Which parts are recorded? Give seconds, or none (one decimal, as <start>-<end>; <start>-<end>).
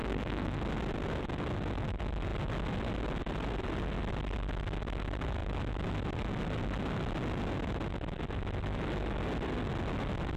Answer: 0.6-10.4